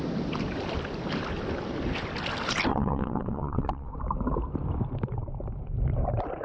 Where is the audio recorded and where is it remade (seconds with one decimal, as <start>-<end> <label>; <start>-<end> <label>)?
0.0-2.7 recorded; 2.7-3.9 remade; 3.9-6.4 recorded